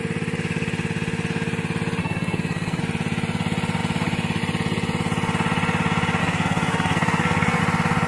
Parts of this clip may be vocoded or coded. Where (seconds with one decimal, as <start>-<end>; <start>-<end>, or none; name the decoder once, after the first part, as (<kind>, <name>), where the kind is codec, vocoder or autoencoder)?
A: 2.0-2.8 (codec, SNAC); 6.2-7.6